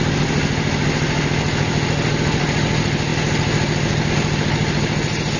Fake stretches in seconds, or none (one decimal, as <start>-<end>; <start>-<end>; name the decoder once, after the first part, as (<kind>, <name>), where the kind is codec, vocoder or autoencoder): none